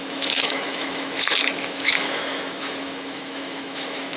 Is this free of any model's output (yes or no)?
no